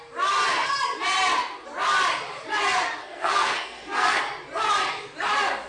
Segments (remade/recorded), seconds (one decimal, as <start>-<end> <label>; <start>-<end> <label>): 0.0-3.0 recorded; 3.0-4.2 remade; 4.2-5.7 recorded